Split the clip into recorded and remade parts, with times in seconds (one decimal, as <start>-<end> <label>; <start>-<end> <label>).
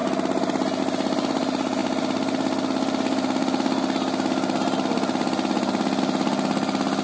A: 0.0-7.0 recorded